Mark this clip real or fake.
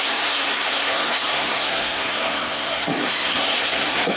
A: fake